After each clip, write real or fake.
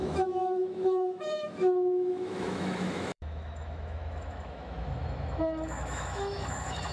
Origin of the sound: fake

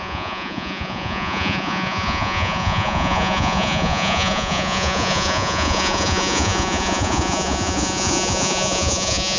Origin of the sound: fake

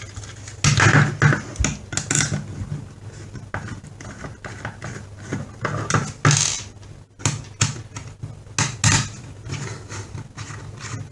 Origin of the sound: real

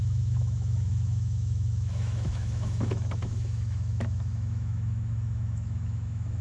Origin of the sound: fake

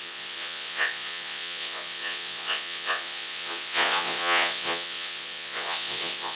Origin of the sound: fake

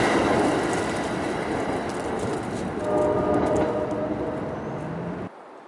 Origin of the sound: real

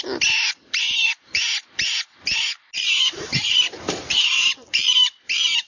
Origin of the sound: real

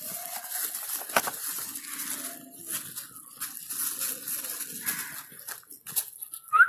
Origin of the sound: real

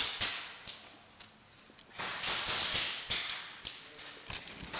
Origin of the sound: real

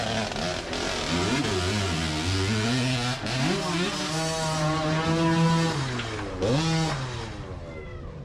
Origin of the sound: real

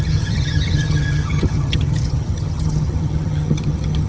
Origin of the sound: fake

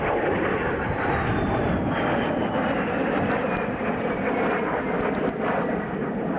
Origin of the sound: real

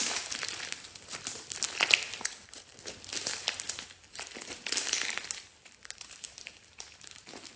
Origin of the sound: real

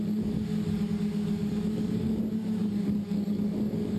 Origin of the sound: fake